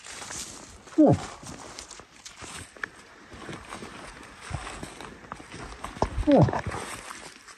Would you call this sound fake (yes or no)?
no